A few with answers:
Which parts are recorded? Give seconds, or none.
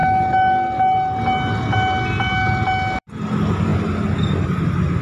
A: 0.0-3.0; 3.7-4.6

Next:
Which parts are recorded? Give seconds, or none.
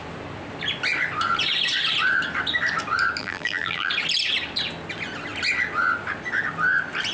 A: 0.0-3.2; 3.9-7.1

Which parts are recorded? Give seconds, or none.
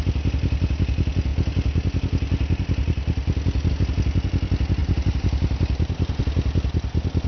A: 0.0-4.8; 6.2-7.3